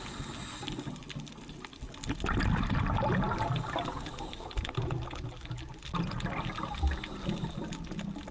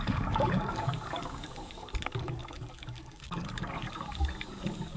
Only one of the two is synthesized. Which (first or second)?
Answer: second